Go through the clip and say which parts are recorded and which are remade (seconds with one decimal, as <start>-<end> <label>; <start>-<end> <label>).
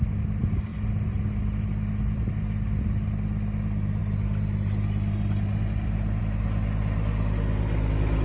0.0-8.2 recorded